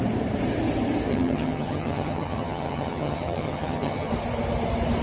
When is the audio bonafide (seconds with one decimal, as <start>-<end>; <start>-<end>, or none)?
0.0-1.1; 4.1-5.0